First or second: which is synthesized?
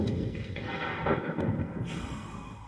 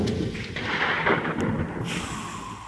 first